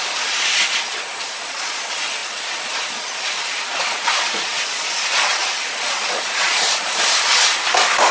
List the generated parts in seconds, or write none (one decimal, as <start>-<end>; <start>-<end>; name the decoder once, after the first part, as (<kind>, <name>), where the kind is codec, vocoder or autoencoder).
0.0-7.5 (vocoder, Vocos)